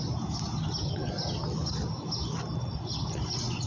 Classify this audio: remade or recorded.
recorded